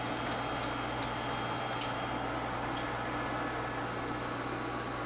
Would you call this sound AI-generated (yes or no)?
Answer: no